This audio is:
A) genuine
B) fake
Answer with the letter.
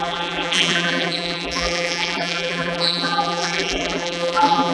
B